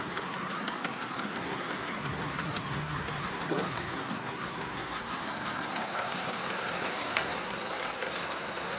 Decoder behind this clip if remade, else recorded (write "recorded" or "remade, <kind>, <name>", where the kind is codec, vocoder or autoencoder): remade, codec, SNAC